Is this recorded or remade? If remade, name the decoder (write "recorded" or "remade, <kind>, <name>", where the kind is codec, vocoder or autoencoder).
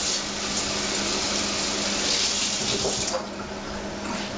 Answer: recorded